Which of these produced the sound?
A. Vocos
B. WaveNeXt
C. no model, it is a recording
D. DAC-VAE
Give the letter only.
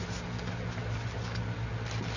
C